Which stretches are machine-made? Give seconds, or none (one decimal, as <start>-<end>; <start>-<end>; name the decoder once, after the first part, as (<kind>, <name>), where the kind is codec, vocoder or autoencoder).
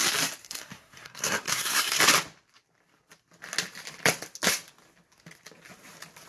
0.4-2.0 (codec, SNAC)